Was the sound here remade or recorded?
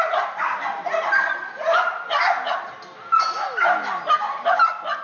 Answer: recorded